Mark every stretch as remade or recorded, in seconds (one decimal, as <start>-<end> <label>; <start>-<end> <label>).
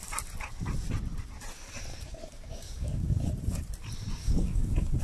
0.0-1.9 recorded; 1.9-3.3 remade; 3.3-4.2 recorded; 4.2-5.0 remade